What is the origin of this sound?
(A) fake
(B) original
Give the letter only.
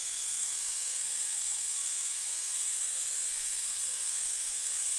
A